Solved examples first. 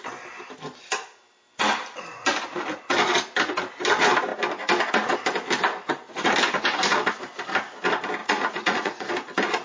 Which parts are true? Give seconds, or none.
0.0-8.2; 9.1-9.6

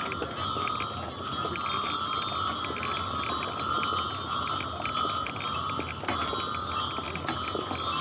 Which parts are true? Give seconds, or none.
0.0-8.0

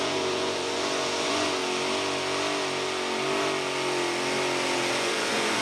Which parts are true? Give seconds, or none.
1.6-5.0